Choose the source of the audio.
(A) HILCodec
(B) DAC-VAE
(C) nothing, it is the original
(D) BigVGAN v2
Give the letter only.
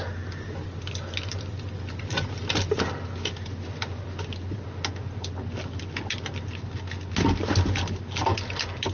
C